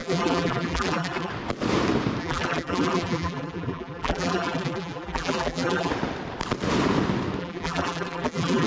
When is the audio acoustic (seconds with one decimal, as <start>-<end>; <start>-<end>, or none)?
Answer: 1.3-2.2; 5.9-7.4